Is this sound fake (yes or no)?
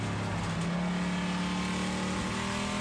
no